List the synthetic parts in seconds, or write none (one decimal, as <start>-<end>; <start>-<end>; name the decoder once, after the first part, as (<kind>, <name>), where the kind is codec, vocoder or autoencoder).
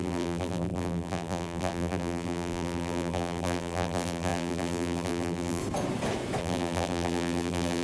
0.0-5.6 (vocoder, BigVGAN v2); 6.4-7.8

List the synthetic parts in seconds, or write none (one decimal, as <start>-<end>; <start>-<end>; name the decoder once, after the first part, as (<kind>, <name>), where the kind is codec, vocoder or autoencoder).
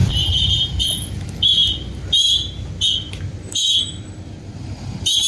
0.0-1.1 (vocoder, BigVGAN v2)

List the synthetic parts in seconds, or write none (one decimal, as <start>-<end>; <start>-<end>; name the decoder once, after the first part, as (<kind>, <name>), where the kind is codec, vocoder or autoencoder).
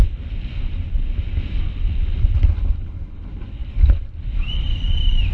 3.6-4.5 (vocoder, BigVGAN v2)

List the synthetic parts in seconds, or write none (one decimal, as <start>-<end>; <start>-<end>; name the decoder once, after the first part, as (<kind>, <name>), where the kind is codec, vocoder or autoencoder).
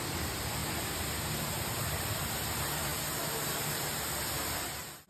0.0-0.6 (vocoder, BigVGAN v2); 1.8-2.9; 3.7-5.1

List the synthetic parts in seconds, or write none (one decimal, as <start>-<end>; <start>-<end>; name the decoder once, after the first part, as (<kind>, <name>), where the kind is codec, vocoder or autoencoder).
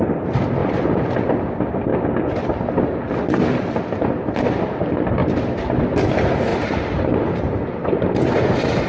5.2-5.8 (vocoder, BigVGAN v2); 6.5-8.9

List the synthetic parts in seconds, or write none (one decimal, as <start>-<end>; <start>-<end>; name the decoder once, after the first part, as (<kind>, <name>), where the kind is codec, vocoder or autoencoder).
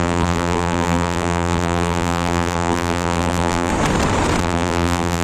0.0-3.7 (vocoder, BigVGAN v2); 4.4-5.2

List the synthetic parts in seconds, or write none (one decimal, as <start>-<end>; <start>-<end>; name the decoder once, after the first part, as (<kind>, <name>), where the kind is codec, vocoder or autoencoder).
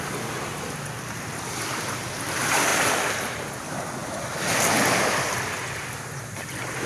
2.7-3.5 (vocoder, BigVGAN v2)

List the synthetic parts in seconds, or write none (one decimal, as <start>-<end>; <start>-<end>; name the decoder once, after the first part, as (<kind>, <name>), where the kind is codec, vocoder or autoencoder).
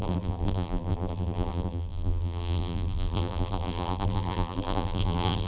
0.0-5.5 (vocoder, BigVGAN v2)